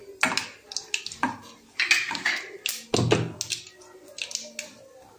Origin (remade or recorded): recorded